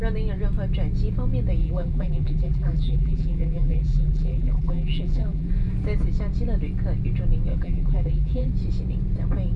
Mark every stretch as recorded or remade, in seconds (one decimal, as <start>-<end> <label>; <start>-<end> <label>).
0.0-1.6 recorded; 1.6-5.5 remade; 5.5-7.5 recorded; 7.5-8.5 remade; 8.5-9.6 recorded